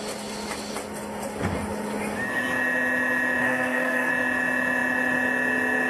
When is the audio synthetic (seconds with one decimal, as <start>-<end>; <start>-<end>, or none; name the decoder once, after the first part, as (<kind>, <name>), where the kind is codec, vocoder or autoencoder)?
3.4-4.1 (codec, SNAC)

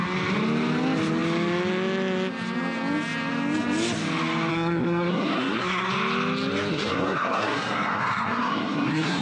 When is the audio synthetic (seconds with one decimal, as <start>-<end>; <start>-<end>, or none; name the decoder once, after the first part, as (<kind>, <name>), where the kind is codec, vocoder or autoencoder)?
4.5-5.9 (codec, SNAC); 6.7-9.2

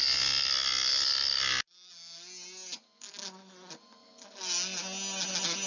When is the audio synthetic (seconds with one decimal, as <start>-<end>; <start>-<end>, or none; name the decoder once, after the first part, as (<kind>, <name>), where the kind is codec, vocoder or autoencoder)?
none